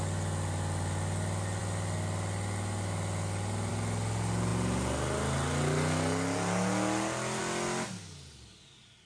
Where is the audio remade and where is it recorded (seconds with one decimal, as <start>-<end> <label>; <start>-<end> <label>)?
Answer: 0.0-9.1 recorded